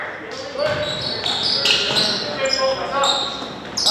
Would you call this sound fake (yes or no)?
no